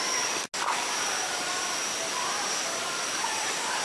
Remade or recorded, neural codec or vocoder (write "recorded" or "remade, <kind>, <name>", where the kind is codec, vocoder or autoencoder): recorded